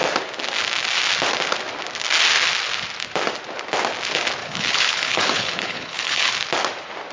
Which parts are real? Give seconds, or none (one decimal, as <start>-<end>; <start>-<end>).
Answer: 0.0-4.4; 6.3-7.1